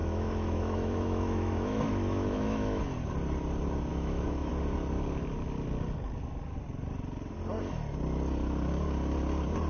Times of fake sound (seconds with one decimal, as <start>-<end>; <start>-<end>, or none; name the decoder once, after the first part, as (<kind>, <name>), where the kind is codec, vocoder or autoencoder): 0.0-2.8 (autoencoder, DAC-VAE); 3.9-4.5